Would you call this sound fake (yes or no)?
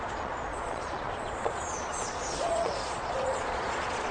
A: yes